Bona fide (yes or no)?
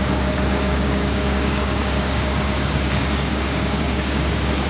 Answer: no